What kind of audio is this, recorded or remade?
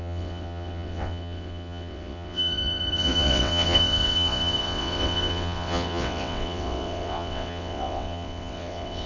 remade